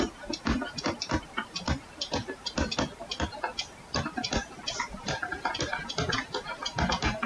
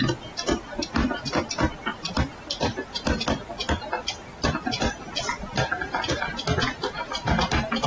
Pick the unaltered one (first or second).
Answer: second